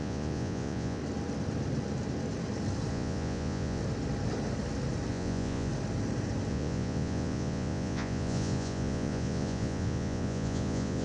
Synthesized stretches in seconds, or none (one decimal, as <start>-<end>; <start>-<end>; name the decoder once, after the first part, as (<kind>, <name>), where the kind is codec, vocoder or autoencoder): 0.0-1.0 (vocoder, Vocos); 2.9-3.8; 5.1-5.7; 6.5-11.0